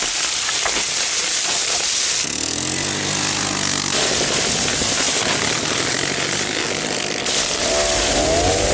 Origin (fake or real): real